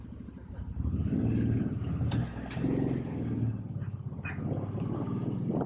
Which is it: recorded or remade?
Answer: recorded